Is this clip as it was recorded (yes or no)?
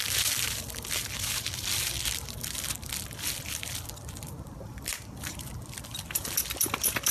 no